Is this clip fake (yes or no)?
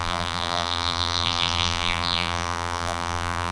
yes